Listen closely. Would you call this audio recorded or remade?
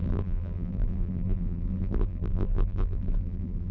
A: remade